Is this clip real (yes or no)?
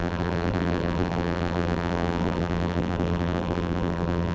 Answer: no